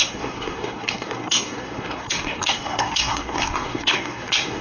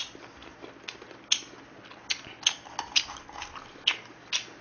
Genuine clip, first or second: second